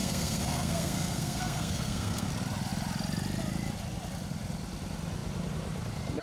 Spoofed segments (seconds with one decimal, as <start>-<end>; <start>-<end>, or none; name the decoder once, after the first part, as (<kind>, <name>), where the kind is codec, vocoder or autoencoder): 0.0-2.3 (codec, SNAC)